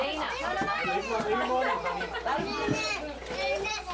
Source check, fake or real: real